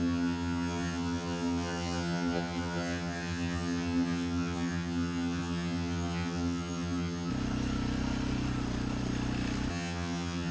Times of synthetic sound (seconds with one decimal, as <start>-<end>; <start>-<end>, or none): 0.0-7.3; 9.7-10.5